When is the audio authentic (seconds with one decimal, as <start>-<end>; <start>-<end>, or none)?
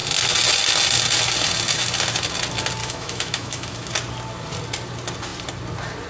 0.0-2.8; 3.9-6.1